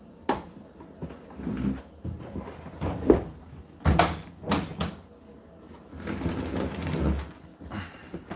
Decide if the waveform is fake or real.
real